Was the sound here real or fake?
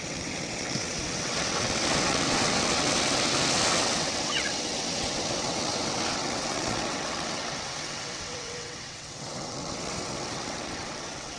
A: fake